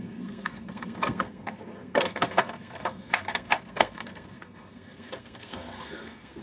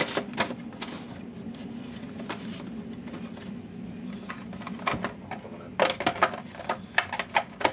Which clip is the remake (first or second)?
first